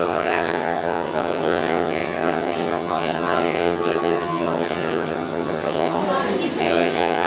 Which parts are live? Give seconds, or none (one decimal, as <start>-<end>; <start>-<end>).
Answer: 6.0-6.6